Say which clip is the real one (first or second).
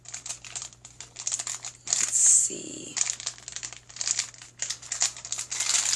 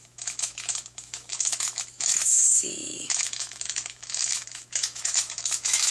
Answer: first